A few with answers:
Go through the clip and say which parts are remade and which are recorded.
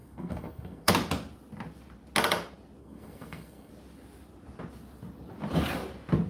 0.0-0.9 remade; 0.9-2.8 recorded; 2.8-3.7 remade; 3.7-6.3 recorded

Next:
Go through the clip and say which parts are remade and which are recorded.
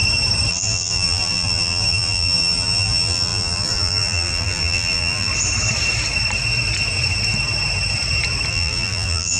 0.0-0.5 recorded; 0.5-5.3 remade; 5.3-8.5 recorded; 8.5-9.4 remade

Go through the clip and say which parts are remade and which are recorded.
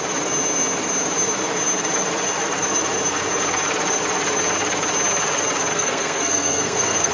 0.0-5.7 recorded; 5.7-7.1 remade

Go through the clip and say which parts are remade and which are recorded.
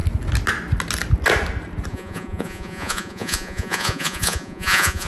0.0-1.9 recorded; 1.9-5.1 remade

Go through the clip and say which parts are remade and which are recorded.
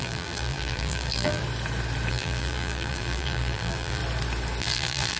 0.0-1.4 remade; 1.4-2.1 recorded; 2.1-4.0 remade; 4.0-4.6 recorded; 4.6-5.2 remade